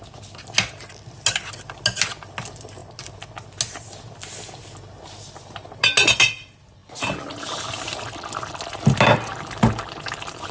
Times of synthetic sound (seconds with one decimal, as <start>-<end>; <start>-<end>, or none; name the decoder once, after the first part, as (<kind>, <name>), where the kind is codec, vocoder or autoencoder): none